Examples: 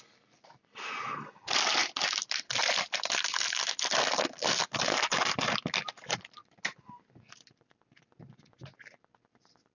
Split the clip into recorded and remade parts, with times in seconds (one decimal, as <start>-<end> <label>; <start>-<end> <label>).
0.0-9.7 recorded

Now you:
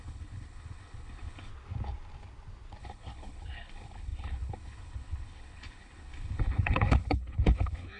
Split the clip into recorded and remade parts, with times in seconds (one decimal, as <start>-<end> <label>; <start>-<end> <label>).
0.0-1.5 remade; 1.5-2.8 recorded; 2.8-8.0 remade

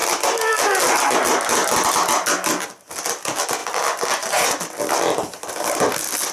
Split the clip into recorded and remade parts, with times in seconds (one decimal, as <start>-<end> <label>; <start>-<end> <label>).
0.0-3.6 recorded; 3.6-5.0 remade; 5.0-6.3 recorded

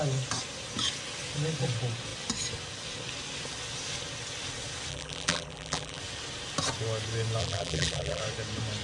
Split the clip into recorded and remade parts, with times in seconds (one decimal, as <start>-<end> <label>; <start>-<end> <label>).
0.0-4.9 recorded; 4.9-6.0 remade; 6.0-7.4 recorded; 7.4-8.2 remade; 8.2-8.8 recorded

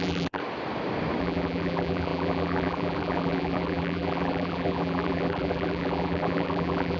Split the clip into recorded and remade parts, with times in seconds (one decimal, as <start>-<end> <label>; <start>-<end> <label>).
0.0-0.4 remade; 0.4-1.2 recorded; 1.2-7.0 remade

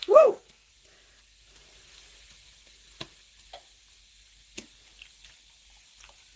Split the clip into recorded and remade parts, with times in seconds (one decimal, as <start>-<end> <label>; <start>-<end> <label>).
0.0-0.7 remade; 0.7-6.4 recorded

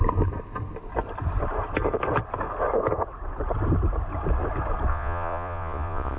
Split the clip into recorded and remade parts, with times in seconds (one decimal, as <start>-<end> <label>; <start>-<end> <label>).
0.0-4.9 recorded; 4.9-6.2 remade